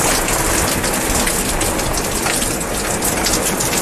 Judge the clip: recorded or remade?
recorded